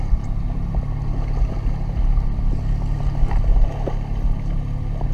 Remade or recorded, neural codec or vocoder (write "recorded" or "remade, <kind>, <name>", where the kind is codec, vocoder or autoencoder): recorded